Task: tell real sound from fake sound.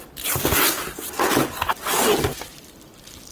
real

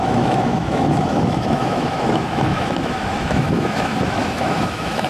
fake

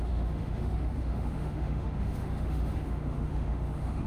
fake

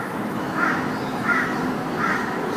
fake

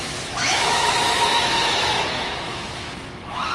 fake